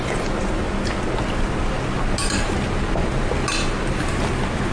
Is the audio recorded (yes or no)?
yes